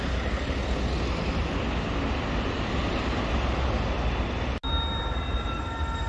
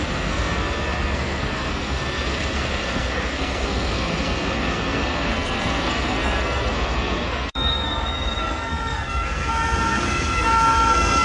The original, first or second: first